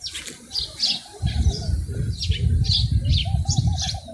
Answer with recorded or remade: recorded